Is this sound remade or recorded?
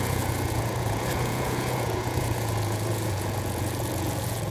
remade